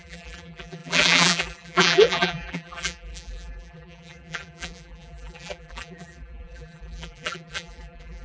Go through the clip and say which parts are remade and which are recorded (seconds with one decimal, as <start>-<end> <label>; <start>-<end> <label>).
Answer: 0.0-8.2 remade